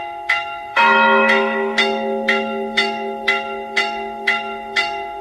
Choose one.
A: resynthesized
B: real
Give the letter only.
A